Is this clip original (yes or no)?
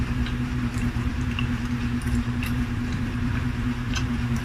no